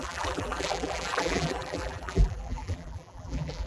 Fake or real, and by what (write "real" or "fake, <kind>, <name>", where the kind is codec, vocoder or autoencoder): fake, vocoder, BigVGAN v2